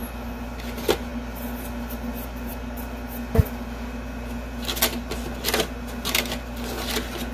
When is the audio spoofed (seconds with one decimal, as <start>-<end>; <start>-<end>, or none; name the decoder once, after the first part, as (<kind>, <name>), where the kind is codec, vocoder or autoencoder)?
none